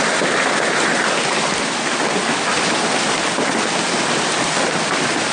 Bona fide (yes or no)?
yes